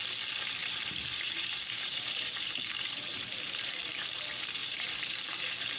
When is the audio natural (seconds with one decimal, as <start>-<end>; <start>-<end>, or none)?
0.0-0.6; 4.1-4.6